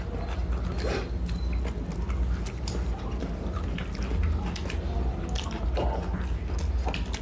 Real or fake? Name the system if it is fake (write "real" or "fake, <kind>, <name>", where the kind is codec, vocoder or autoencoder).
real